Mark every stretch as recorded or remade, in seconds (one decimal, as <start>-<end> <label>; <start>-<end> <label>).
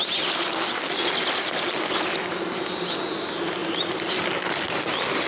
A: 0.0-3.6 recorded; 3.6-4.6 remade; 4.6-5.3 recorded